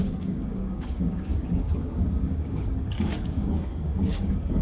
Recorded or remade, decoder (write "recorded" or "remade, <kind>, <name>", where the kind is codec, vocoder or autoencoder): remade, codec, DAC